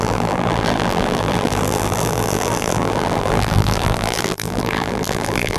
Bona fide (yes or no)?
no